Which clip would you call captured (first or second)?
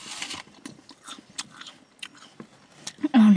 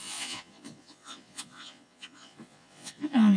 first